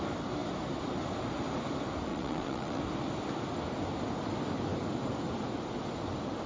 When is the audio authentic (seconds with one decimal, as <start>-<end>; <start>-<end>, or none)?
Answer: 0.0-2.1; 2.8-6.5